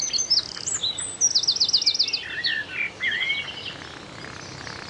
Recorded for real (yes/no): yes